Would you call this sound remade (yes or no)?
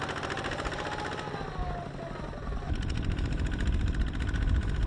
no